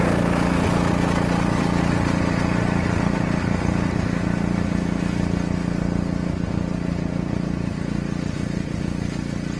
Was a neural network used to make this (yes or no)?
no